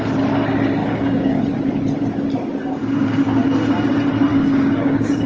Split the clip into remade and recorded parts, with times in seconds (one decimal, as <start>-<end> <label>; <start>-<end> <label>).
0.0-0.8 recorded; 0.8-1.4 remade; 1.4-4.3 recorded; 4.3-5.3 remade